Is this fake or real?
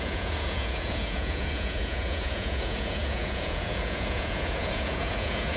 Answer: fake